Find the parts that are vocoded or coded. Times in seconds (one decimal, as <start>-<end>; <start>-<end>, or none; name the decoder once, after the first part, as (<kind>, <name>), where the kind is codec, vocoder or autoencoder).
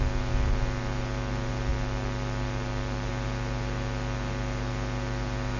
none